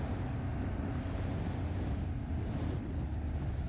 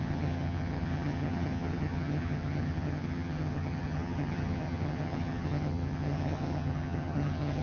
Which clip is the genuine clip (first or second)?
first